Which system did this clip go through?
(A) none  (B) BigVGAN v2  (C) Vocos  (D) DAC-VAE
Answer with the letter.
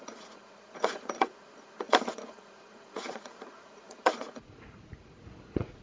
C